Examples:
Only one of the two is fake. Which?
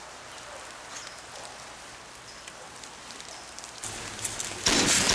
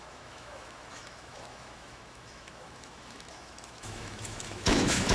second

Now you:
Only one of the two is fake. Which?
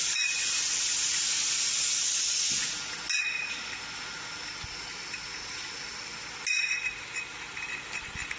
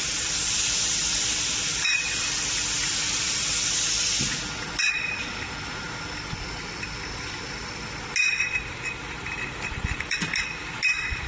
second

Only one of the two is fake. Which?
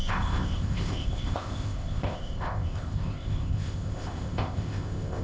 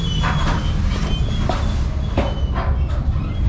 first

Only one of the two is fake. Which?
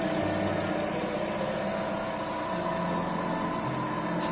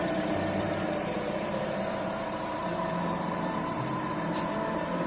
second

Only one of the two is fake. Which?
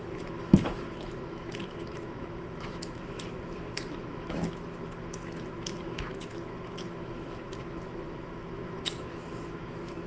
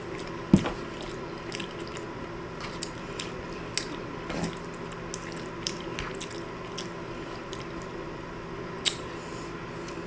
first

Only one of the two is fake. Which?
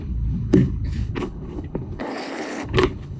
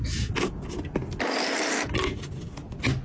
first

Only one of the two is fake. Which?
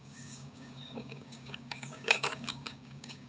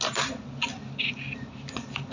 first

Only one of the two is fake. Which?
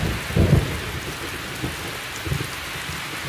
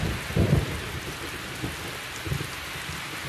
second